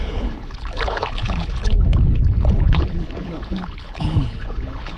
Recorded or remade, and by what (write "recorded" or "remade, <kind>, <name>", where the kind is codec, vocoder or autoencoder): remade, codec, HILCodec